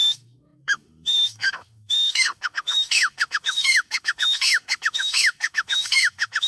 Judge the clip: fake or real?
fake